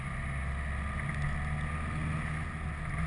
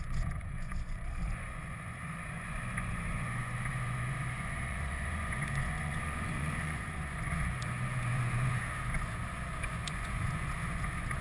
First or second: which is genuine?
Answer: first